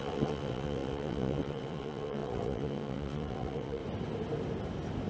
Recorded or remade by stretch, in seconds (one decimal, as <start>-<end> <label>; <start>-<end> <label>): 0.0-3.8 remade; 3.8-5.1 recorded